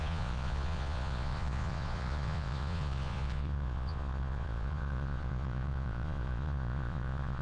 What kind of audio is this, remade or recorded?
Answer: remade